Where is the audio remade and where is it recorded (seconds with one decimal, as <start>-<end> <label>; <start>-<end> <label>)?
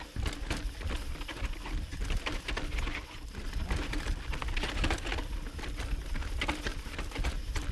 0.0-6.7 recorded; 6.7-7.3 remade; 7.3-7.7 recorded